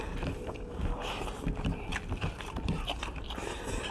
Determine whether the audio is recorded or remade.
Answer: remade